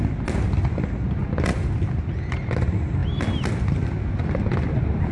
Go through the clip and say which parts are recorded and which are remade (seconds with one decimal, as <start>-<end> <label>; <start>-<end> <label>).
0.0-5.1 recorded